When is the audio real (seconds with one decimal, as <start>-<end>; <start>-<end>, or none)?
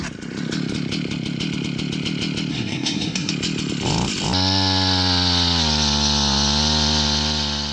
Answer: 0.0-2.5; 3.3-7.7